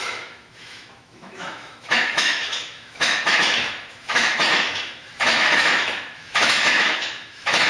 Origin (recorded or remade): remade